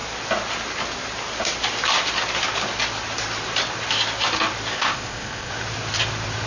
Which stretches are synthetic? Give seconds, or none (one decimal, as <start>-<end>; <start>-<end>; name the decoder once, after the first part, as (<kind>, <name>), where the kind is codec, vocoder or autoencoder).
4.7-5.5 (codec, ZipCodec)